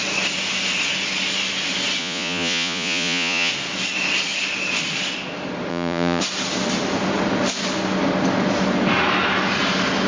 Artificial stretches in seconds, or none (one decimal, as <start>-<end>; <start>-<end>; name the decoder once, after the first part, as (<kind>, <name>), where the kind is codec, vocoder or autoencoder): 2.0-3.5 (vocoder, Vocos); 5.7-6.2

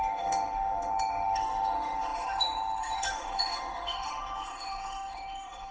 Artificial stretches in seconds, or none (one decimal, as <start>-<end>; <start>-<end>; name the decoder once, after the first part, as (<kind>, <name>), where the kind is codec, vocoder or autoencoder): 0.0-5.7 (autoencoder, DAC-VAE)

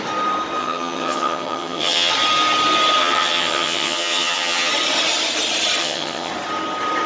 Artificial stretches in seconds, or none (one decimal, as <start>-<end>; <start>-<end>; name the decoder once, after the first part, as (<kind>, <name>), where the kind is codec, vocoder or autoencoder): 0.6-2.1 (vocoder, HiFi-GAN); 3.0-4.7; 5.8-6.3